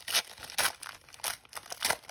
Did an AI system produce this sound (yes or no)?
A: no